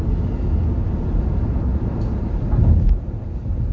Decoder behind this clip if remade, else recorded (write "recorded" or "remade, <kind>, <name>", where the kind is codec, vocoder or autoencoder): recorded